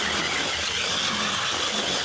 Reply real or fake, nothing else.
real